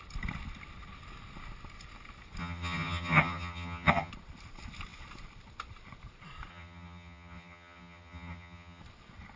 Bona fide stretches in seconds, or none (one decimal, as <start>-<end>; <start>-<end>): 0.0-2.4; 4.1-6.5; 8.8-9.4